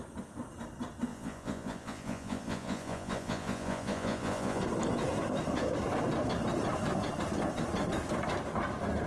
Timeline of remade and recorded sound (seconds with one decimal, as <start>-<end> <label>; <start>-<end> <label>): 0.0-1.1 recorded; 1.1-4.6 remade; 4.6-9.1 recorded